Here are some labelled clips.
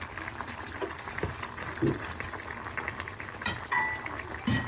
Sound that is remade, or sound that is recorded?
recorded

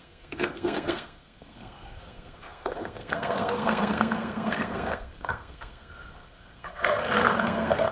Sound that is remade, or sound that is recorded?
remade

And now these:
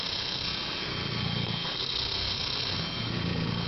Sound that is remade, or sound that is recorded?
remade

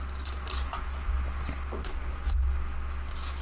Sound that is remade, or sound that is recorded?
recorded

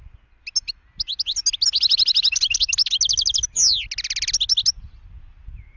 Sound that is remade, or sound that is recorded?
recorded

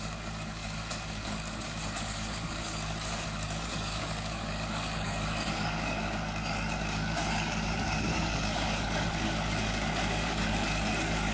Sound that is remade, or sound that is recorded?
remade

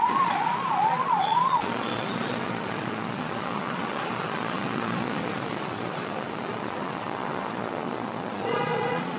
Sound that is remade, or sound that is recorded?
remade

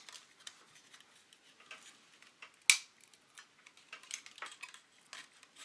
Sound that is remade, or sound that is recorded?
recorded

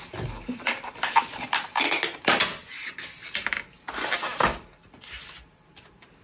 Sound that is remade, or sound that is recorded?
recorded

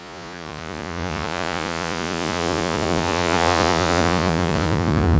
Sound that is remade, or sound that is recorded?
remade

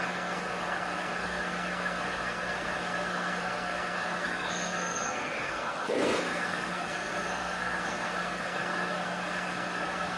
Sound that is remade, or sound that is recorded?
remade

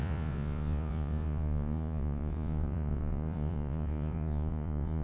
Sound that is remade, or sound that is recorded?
remade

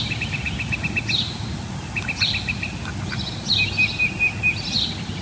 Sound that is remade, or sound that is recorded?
recorded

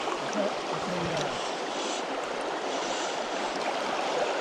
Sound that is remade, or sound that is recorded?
remade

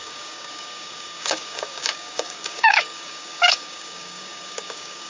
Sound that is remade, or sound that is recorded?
remade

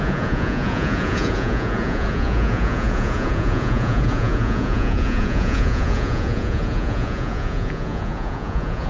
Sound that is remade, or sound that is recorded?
remade